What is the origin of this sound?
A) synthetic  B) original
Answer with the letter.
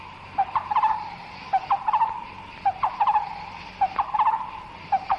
B